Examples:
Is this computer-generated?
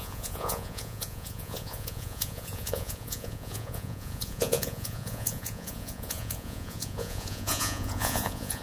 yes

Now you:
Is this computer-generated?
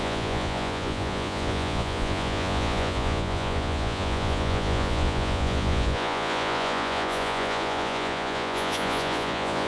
yes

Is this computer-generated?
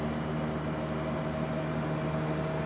no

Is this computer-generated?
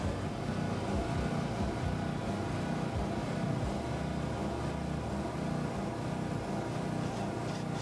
no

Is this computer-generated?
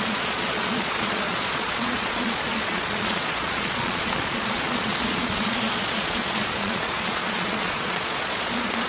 yes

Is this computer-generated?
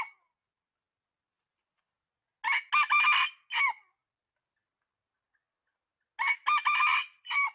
no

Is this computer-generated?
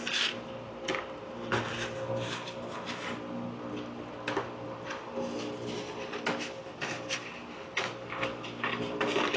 no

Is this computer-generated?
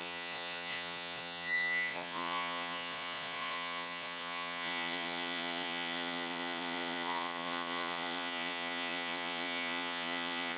yes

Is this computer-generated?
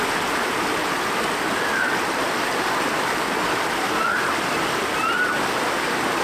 no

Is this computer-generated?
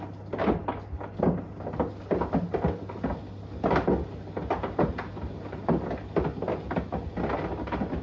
no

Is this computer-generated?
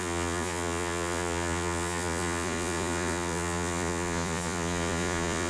yes